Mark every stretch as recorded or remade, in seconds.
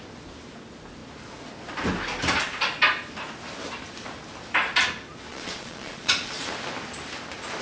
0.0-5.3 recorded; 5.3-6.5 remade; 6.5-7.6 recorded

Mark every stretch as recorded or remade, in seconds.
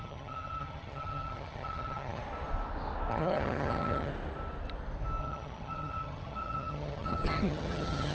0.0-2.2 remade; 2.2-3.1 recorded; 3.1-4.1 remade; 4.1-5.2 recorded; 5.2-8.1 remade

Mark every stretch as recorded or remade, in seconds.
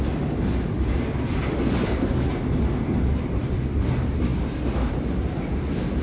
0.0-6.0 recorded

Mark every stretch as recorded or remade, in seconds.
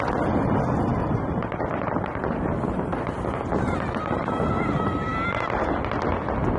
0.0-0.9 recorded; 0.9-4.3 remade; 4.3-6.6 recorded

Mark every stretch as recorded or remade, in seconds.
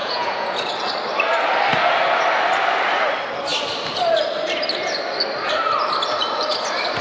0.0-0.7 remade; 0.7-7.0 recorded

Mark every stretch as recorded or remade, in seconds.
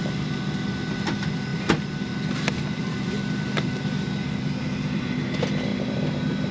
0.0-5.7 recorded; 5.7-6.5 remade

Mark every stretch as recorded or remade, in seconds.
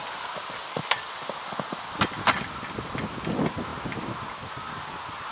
0.0-5.3 recorded